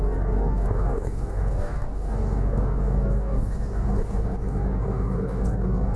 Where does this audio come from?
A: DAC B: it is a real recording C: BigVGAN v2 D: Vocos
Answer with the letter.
A